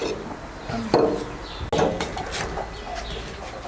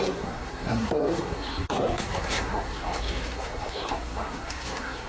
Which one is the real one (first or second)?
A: first